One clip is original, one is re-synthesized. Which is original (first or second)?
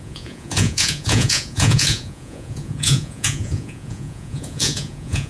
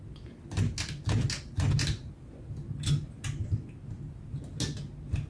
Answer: second